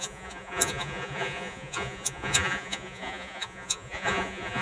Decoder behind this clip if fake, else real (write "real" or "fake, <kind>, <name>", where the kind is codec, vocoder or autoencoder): fake, vocoder, Vocos